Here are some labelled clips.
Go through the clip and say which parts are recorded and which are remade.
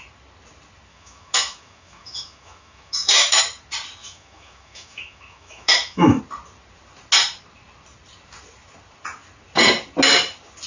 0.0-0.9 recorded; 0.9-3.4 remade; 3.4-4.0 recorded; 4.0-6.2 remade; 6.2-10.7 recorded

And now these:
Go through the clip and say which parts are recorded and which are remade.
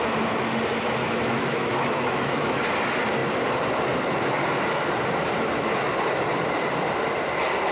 0.0-1.0 recorded; 1.0-2.7 remade; 2.7-7.7 recorded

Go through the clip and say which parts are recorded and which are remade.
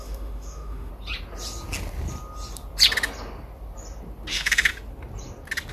0.0-0.9 remade; 0.9-4.3 recorded; 4.3-4.7 remade; 4.7-5.7 recorded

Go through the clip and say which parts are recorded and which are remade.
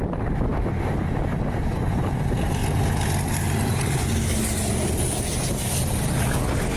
0.0-6.8 recorded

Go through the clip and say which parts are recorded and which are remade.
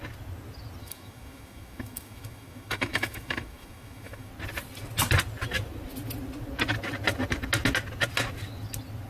0.0-0.8 recorded; 0.8-4.3 remade; 4.3-9.1 recorded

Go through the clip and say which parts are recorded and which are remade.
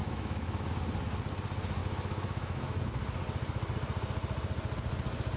0.0-0.7 remade; 0.7-1.8 recorded; 1.8-2.8 remade; 2.8-5.4 recorded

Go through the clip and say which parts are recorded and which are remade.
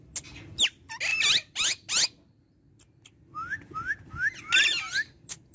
0.0-5.5 recorded